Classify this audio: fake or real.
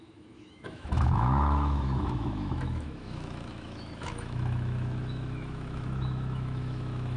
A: fake